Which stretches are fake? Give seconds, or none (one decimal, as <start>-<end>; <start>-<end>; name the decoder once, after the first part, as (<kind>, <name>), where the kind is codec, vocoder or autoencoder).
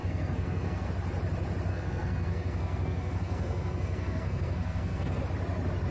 0.0-0.9 (codec, SNAC); 1.7-5.2